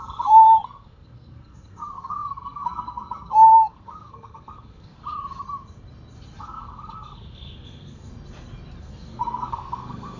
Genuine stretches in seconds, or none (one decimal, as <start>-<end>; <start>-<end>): 5.0-6.4; 8.1-8.8